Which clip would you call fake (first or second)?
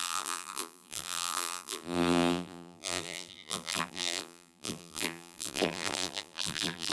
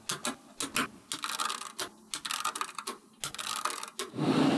first